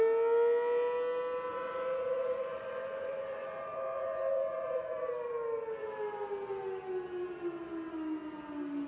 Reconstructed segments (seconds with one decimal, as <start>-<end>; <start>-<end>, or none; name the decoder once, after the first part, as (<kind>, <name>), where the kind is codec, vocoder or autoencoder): 1.5-5.1 (vocoder, Vocos)